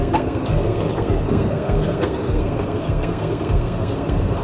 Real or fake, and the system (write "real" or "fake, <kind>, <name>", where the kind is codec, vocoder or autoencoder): fake, codec, SNAC